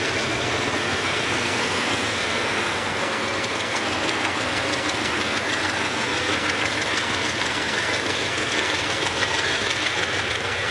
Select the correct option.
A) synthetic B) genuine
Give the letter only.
A